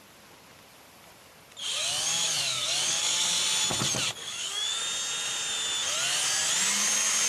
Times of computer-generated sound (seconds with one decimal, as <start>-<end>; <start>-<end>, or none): 1.7-3.4; 4.2-4.8

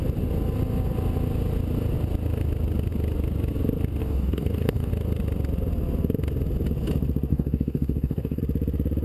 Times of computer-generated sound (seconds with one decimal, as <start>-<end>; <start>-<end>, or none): 4.0-4.9; 7.3-8.4

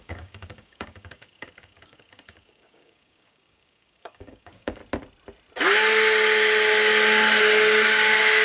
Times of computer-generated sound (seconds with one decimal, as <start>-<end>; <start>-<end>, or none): 0.0-4.8; 7.9-8.4

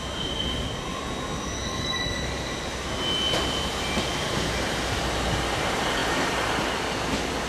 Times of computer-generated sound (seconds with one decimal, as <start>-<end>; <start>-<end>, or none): 1.7-2.5

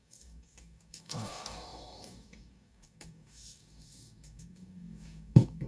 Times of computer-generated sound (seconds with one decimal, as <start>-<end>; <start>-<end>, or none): 0.0-5.7

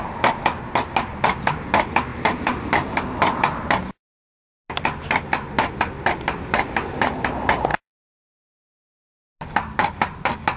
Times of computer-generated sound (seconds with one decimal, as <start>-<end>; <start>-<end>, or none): 7.7-8.3

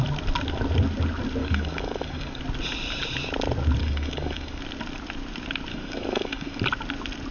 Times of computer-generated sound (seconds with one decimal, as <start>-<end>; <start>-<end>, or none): 1.4-2.4; 3.8-4.6; 5.7-6.6